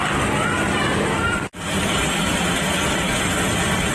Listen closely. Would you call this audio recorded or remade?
recorded